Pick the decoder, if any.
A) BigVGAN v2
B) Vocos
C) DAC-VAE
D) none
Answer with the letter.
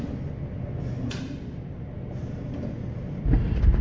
D